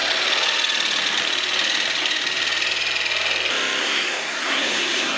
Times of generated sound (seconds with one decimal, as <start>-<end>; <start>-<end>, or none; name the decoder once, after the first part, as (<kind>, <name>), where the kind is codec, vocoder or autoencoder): 3.8-5.2 (codec, SNAC)